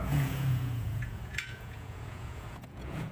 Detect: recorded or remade remade